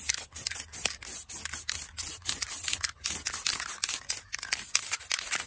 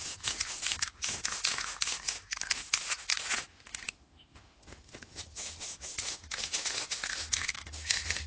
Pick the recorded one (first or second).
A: first